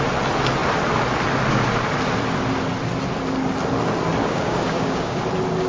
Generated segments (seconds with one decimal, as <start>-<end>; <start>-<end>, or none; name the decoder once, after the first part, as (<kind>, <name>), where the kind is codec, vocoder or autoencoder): 4.2-5.2 (codec, DAC)